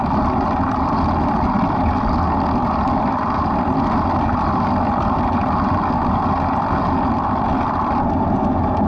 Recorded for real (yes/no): yes